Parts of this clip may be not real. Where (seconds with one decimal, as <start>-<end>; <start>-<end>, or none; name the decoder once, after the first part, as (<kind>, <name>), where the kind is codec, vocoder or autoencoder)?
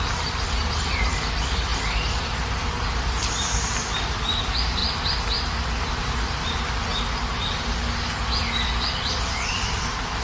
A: 0.0-4.8 (vocoder, BigVGAN v2); 5.8-6.9; 9.1-10.2